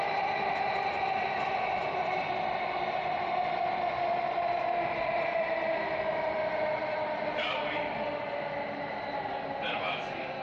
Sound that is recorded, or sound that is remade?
recorded